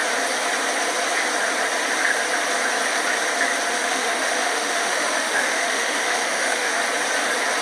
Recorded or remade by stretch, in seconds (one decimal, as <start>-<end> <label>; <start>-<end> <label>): 0.0-3.7 recorded; 3.7-6.8 remade; 6.8-7.6 recorded